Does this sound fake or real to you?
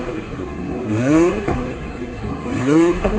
fake